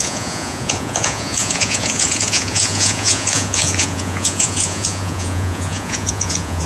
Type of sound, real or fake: fake